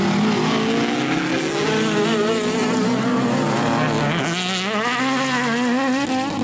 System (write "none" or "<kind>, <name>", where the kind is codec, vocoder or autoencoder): none